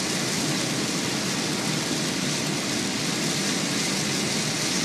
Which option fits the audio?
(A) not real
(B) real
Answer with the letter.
B